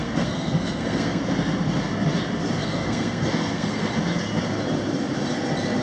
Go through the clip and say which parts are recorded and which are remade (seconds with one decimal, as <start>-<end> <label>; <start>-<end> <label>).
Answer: 0.0-1.2 remade; 1.2-2.6 recorded; 2.6-3.9 remade; 3.9-5.8 recorded